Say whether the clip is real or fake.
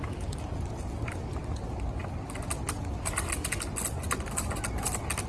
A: real